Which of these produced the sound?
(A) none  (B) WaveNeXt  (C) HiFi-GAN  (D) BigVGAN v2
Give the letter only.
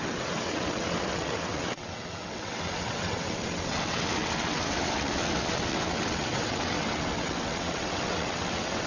B